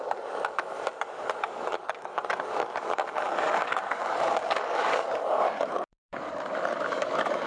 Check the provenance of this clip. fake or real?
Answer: fake